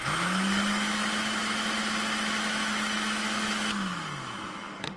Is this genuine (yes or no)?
no